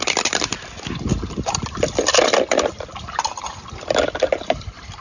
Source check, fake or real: real